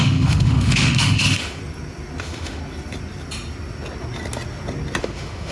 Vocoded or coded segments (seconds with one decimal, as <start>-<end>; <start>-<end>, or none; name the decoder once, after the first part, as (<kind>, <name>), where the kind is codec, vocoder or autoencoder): 0.0-1.6 (autoencoder, DAC-VAE); 2.2-2.6; 5.0-5.5

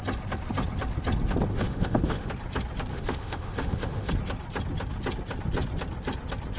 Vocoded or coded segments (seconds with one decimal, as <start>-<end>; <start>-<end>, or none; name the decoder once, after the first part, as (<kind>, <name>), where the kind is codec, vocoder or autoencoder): 1.5-2.3 (autoencoder, DAC-VAE); 2.9-4.1